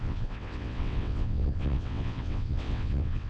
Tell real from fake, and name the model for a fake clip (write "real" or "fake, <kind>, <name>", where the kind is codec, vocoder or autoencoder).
fake, vocoder, WaveNeXt